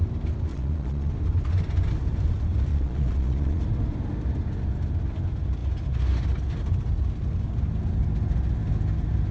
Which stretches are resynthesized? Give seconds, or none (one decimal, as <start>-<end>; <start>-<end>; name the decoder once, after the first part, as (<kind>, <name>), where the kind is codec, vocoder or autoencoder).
0.5-1.1 (vocoder, Vocos); 2.7-3.6